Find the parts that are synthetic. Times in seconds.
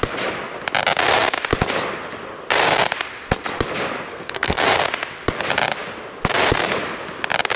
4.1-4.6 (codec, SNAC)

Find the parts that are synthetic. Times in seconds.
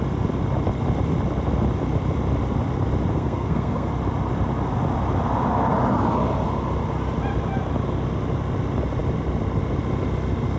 3.1-3.9 (codec, SNAC)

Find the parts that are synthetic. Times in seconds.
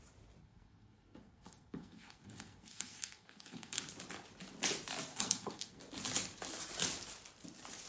0.4-3.8 (codec, SNAC); 5.1-5.8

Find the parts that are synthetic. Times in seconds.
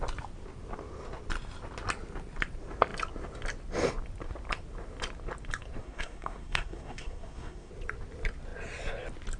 5.8-7.7 (codec, SNAC)